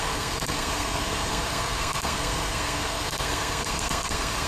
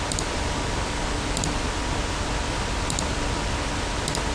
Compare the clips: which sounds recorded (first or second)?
second